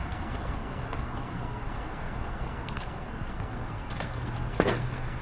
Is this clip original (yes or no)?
no